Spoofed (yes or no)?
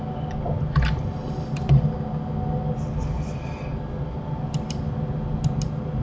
no